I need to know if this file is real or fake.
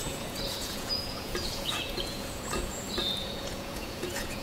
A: fake